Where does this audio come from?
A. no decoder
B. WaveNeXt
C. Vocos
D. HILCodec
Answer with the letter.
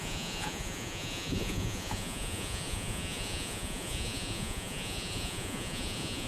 C